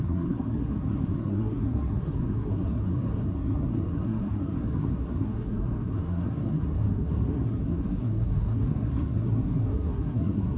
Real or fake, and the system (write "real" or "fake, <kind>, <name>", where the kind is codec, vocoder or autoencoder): fake, codec, SNAC